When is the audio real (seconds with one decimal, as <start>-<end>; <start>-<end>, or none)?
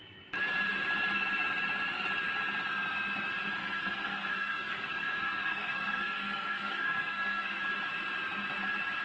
0.0-3.6; 7.6-9.0